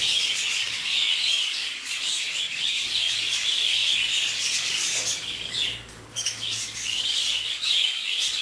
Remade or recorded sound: remade